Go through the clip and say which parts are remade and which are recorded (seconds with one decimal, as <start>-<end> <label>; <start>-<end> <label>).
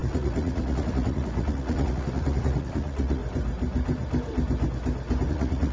0.0-3.2 remade; 3.2-5.3 recorded; 5.3-5.7 remade